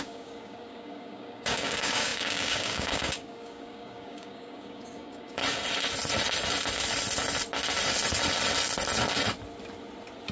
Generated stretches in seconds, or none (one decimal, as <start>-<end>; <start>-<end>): 0.0-5.4